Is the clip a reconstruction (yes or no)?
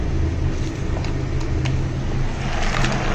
no